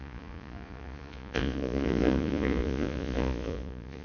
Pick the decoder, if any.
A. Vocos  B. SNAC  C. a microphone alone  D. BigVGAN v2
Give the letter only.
A